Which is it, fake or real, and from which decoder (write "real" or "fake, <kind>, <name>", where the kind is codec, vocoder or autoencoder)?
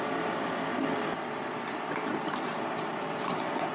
fake, vocoder, BigVGAN v2